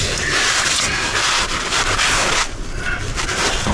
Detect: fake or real real